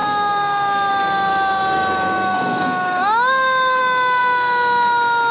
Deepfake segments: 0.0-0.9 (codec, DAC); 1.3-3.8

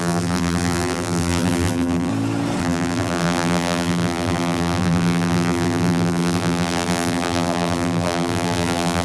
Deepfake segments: 0.0-2.1 (vocoder, BigVGAN v2); 2.6-9.0